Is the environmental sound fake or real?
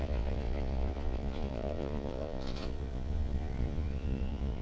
fake